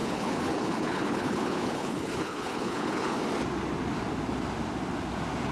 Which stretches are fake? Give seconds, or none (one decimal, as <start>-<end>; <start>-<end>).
0.0-3.2